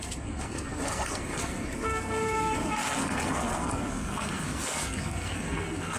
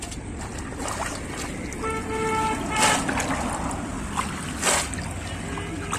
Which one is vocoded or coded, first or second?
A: first